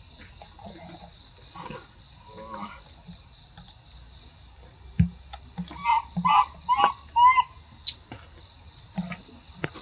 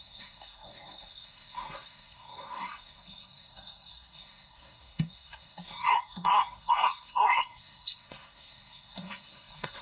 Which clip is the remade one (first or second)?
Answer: second